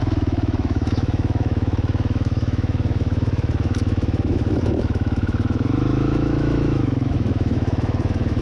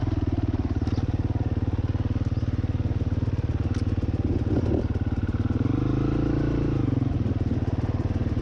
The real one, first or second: second